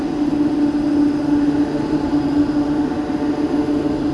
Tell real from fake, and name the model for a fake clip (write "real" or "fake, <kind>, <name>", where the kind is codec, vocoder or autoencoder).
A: real